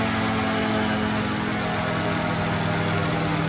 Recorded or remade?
recorded